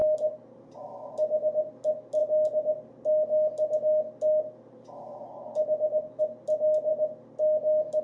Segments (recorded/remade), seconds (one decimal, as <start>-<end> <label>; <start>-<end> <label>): 0.0-8.0 recorded